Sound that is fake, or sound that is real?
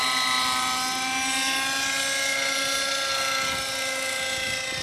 real